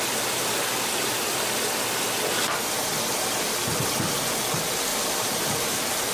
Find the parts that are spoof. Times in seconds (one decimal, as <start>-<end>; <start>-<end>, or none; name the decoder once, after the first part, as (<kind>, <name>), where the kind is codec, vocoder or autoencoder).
4.9-6.1 (vocoder, BigVGAN v2)